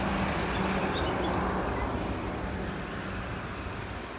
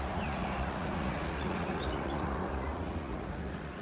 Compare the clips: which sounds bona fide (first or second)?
first